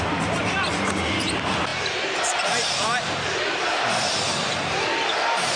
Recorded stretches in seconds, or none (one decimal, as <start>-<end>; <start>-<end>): 0.0-5.6